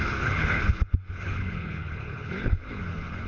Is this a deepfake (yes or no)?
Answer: yes